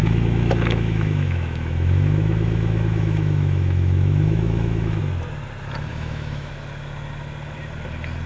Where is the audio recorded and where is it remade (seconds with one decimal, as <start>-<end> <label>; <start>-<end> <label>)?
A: 0.0-5.0 remade; 5.0-5.9 recorded; 5.9-6.5 remade; 6.5-8.3 recorded